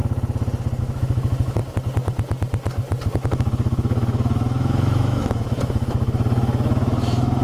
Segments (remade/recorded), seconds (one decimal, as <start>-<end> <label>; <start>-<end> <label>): 0.0-0.8 recorded; 0.8-1.6 remade; 1.6-3.1 recorded; 3.1-7.4 remade